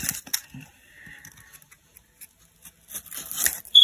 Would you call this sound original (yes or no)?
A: yes